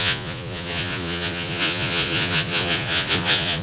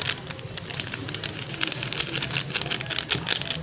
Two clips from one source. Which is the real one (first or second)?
second